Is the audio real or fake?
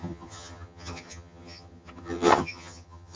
fake